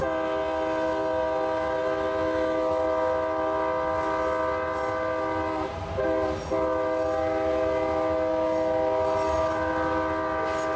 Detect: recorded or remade recorded